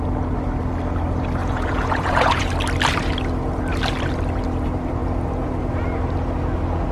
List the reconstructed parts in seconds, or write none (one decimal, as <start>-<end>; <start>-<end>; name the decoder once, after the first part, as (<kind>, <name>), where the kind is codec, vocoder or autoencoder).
1.4-2.5 (vocoder, Vocos)